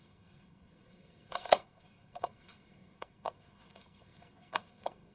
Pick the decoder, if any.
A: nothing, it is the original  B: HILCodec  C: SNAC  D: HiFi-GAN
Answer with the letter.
C